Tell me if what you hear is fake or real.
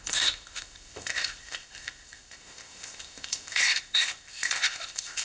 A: fake